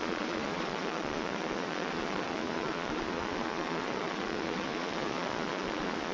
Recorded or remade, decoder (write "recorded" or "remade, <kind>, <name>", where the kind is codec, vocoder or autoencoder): remade, vocoder, Vocos